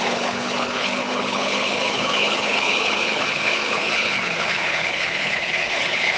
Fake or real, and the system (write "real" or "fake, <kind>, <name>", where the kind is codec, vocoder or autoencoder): fake, codec, HILCodec